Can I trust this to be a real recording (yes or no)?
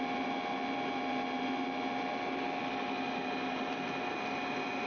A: yes